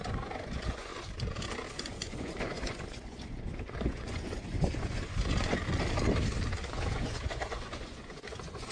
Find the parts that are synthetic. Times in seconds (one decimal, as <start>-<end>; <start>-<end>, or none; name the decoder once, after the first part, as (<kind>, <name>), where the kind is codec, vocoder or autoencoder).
0.0-0.9 (vocoder, Vocos); 1.7-5.6; 6.7-8.7